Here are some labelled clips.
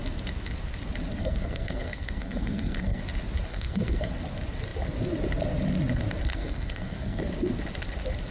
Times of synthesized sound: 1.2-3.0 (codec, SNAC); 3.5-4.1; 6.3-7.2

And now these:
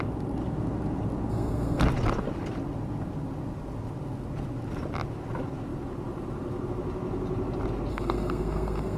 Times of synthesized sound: 1.3-1.8 (codec, SNAC); 7.9-9.0

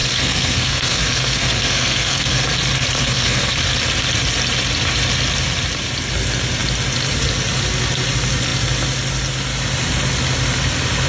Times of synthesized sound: 0.0-2.4 (codec, SNAC); 3.0-3.5

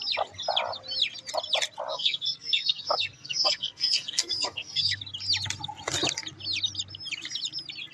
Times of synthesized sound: 1.9-5.0 (codec, SNAC)

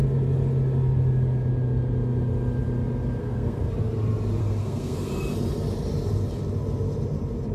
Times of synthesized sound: 3.2-3.7 (codec, SNAC); 4.4-5.1

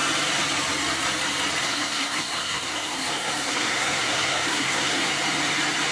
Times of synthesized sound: 1.6-5.1 (codec, SNAC)